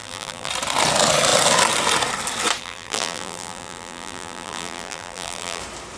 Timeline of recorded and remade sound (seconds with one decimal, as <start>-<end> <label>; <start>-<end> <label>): 0.0-0.5 remade; 0.5-2.6 recorded; 2.6-5.6 remade; 5.6-6.0 recorded